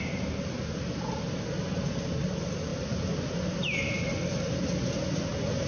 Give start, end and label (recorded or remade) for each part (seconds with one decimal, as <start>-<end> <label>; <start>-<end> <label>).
0.0-5.7 recorded